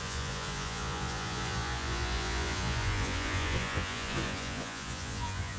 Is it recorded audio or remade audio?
remade